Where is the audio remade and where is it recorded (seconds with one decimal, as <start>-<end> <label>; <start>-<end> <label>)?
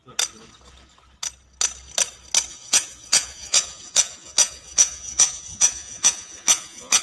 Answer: 0.0-2.5 recorded; 2.5-7.0 remade